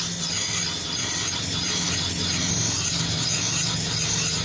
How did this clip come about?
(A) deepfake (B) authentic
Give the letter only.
B